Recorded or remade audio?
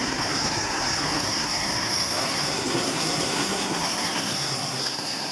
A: remade